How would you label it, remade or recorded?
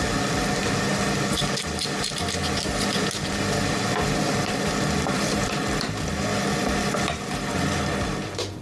recorded